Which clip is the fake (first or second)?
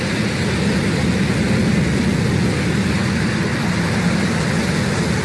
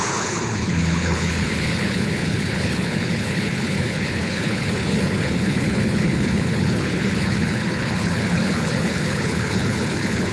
second